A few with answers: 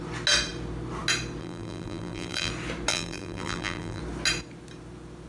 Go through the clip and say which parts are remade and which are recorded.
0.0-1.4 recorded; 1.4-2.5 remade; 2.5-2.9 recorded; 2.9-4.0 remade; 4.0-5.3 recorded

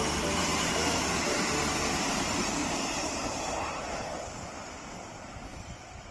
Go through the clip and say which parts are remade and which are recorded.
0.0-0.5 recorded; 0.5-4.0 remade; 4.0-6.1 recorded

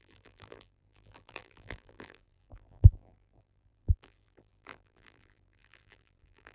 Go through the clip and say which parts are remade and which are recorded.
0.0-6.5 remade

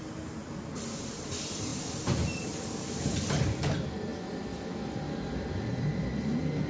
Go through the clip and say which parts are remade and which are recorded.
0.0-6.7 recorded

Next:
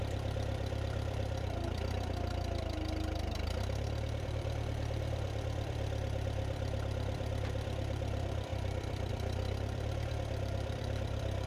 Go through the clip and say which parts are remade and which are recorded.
0.0-11.5 remade